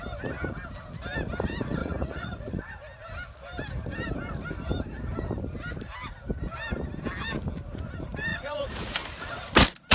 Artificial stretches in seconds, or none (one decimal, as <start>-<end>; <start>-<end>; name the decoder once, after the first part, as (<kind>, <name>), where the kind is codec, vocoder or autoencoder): 1.8-2.6 (vocoder, Vocos); 8.3-9.0